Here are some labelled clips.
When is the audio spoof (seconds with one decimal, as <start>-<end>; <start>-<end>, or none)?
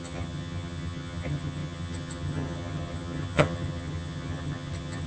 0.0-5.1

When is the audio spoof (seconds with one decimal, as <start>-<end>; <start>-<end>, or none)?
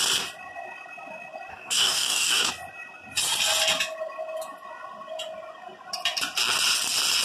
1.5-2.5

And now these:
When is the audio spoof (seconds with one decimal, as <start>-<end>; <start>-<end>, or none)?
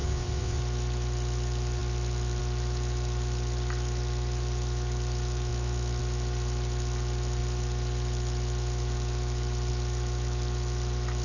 0.0-0.6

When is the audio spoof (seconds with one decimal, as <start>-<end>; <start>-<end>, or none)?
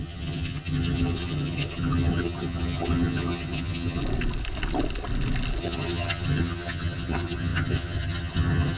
0.0-4.0; 5.6-8.8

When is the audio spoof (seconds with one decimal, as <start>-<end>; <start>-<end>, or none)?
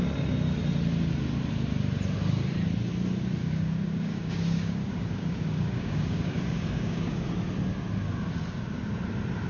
3.4-7.3